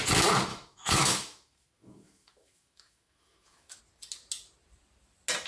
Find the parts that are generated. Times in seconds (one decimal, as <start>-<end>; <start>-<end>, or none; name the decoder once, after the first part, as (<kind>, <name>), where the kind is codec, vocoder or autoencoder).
0.5-3.8 (autoencoder, DAC-VAE)